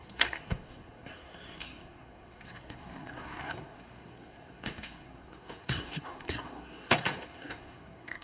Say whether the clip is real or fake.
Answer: fake